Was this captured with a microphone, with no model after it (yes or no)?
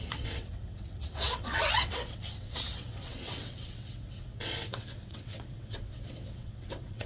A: no